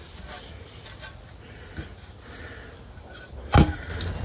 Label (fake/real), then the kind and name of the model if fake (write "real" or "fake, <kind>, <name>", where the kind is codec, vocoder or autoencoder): real